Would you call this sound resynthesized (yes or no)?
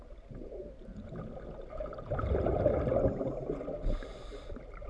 no